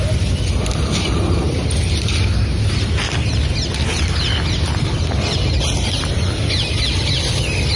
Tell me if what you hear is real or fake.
real